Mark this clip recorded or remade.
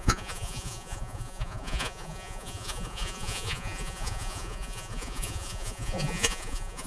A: remade